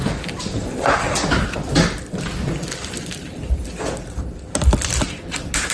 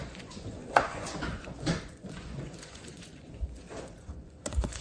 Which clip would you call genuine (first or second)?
first